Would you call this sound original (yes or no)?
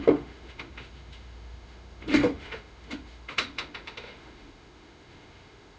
no